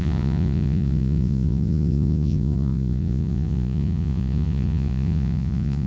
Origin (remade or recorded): remade